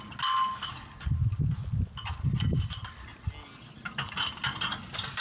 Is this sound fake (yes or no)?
no